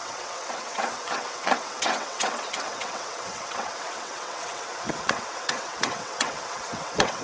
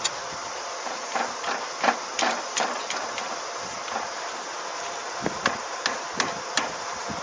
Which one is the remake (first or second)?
first